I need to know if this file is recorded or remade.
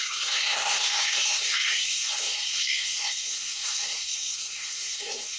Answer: remade